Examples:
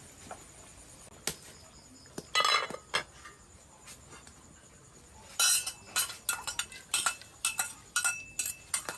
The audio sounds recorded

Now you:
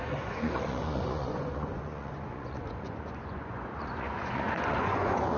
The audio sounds remade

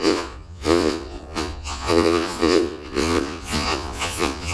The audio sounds remade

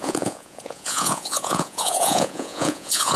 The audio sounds remade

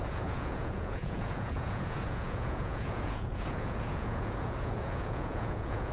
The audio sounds remade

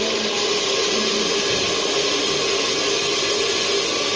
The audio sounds recorded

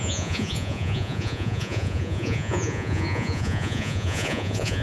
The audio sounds remade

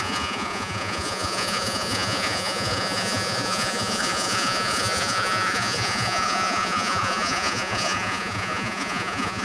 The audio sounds remade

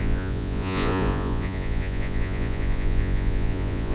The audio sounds remade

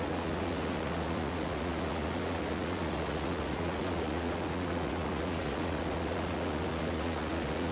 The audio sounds remade